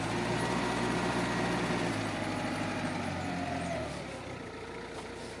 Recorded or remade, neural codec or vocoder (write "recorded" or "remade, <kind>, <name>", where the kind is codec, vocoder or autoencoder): recorded